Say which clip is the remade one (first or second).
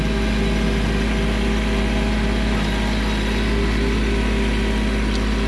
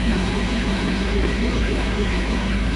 second